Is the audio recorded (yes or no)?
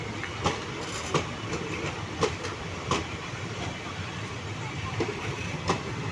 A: yes